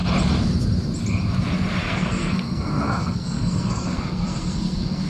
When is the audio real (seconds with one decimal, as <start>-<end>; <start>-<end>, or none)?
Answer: 0.0-1.8